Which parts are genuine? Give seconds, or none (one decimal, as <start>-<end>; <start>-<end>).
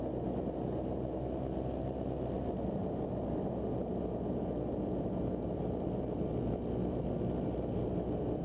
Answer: 0.0-8.4